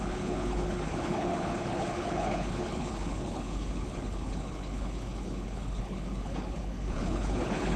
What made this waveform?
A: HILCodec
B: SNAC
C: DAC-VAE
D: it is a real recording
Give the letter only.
A